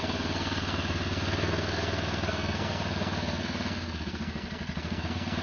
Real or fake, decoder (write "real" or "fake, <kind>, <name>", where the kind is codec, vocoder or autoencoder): fake, codec, SNAC